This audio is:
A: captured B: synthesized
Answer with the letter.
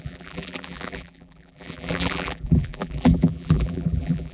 B